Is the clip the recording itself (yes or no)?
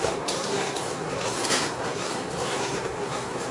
no